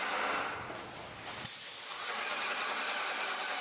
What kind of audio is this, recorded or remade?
recorded